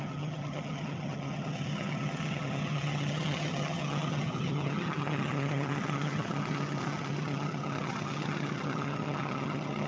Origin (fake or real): fake